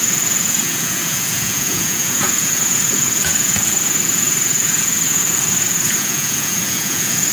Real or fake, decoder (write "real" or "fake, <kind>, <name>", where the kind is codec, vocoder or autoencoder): fake, vocoder, Vocos